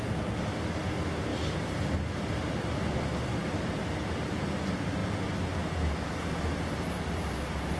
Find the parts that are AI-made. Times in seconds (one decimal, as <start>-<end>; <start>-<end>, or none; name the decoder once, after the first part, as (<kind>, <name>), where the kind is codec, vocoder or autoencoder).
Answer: none